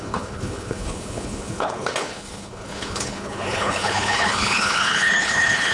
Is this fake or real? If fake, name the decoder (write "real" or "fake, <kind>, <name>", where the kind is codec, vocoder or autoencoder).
fake, codec, HILCodec